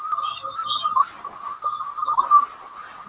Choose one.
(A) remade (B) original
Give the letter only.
B